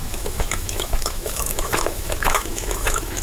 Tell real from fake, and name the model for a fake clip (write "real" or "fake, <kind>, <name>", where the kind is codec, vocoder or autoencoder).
fake, autoencoder, DAC-VAE